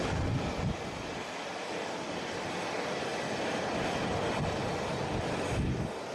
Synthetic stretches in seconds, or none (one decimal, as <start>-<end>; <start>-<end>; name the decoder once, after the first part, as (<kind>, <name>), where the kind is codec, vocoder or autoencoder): 0.0-3.1 (vocoder, BigVGAN v2)